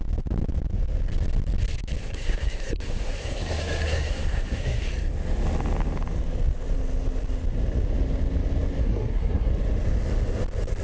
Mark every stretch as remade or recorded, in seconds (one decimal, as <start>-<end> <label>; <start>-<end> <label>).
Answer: 0.0-2.0 recorded; 2.0-4.9 remade; 4.9-8.8 recorded; 8.8-9.5 remade; 9.5-10.8 recorded